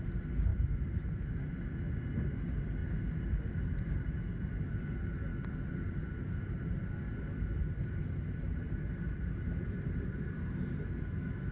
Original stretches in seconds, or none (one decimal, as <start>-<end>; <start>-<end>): 0.0-0.5; 1.4-5.3; 10.2-11.5